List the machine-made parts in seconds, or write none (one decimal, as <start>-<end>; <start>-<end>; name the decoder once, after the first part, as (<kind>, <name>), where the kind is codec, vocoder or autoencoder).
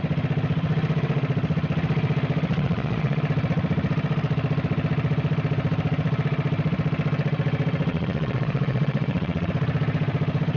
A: 2.5-3.2 (vocoder, Vocos); 7.9-9.5